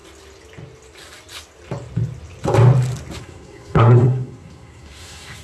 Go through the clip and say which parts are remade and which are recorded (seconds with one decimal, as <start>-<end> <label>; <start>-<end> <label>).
0.0-3.2 recorded; 3.2-5.4 remade